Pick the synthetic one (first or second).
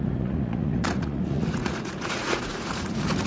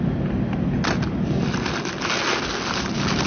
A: first